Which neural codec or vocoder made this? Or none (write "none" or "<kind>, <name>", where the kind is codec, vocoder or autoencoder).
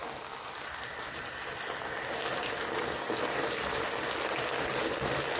none